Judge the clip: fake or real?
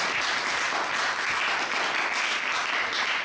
real